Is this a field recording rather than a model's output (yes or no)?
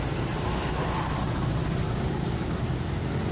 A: yes